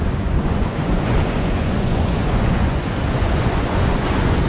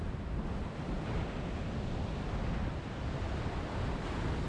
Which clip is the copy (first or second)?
first